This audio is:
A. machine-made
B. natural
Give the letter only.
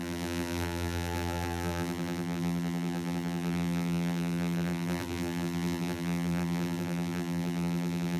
A